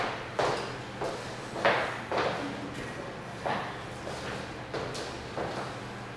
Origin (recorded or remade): recorded